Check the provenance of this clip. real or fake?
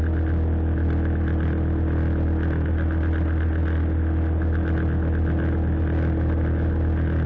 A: real